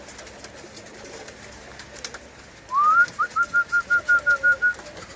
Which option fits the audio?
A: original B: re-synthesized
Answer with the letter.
A